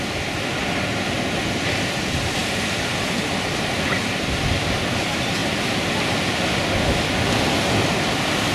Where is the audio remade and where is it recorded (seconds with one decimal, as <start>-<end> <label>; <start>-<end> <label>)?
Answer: 0.0-8.5 recorded